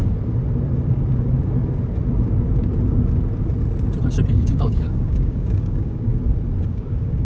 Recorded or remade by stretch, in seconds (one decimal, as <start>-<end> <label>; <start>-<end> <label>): 0.0-4.3 recorded; 4.3-6.1 remade; 6.1-6.7 recorded; 6.7-7.2 remade